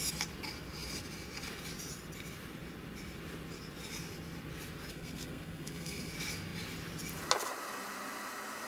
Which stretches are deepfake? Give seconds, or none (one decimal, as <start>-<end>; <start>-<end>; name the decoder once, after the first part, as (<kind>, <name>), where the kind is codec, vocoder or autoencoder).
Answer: 4.9-6.1 (codec, SNAC)